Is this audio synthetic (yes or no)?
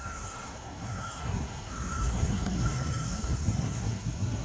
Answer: yes